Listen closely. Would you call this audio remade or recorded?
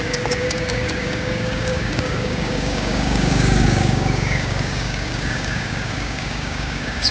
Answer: remade